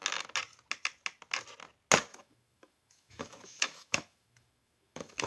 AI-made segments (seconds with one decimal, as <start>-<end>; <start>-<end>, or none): 2.1-5.3